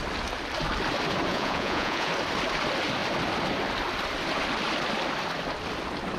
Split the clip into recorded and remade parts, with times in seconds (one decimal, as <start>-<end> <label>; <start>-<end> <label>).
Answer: 0.0-1.3 recorded; 1.3-2.1 remade; 2.1-6.2 recorded